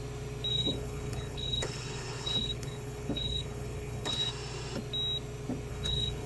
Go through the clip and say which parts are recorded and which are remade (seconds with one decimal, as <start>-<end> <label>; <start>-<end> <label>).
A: 0.0-0.5 recorded; 0.5-4.3 remade; 4.3-5.7 recorded; 5.7-6.3 remade